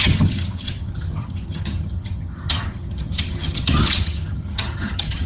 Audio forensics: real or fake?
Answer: fake